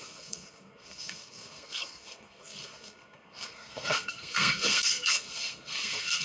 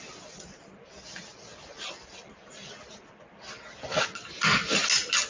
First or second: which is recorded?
second